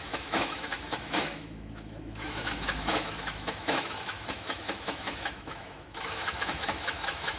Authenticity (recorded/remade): remade